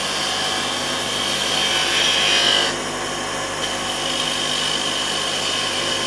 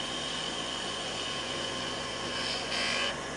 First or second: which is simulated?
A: second